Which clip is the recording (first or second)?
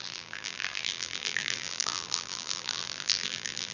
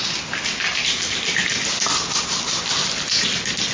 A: second